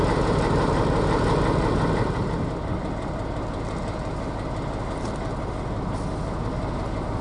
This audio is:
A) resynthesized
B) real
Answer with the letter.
B